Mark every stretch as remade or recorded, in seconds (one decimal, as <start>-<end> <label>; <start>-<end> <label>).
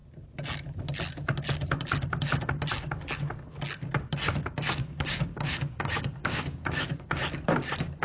0.0-4.8 recorded; 4.8-7.2 remade; 7.2-8.0 recorded